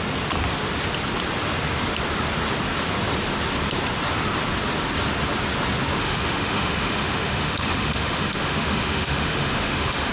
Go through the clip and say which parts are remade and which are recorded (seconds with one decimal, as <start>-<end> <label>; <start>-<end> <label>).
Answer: 0.0-6.0 recorded; 6.0-10.1 remade